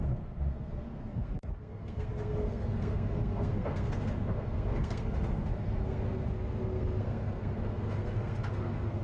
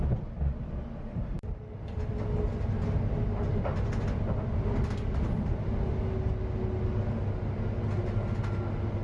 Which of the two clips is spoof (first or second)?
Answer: first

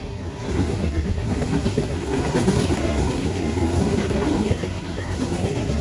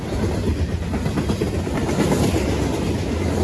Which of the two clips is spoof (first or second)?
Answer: first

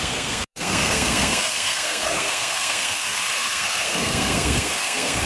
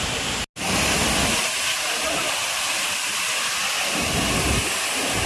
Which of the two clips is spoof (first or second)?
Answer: first